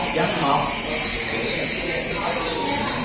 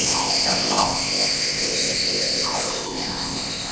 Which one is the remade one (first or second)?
second